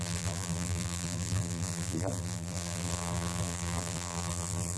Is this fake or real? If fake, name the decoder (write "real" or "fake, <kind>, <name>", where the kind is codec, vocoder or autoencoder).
fake, vocoder, BigVGAN v2